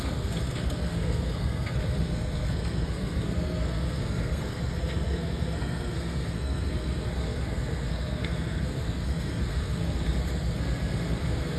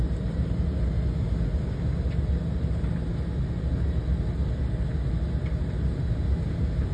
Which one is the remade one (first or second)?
first